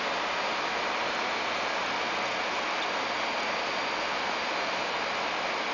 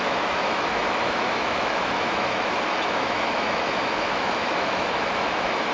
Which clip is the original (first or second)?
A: first